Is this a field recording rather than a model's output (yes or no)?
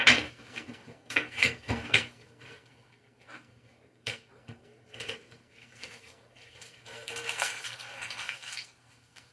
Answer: no